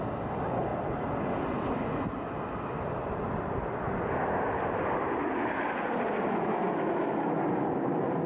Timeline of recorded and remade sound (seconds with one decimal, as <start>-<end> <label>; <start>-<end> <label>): 0.0-8.3 recorded